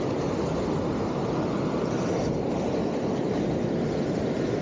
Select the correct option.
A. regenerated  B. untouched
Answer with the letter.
B